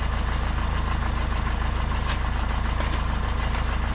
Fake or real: real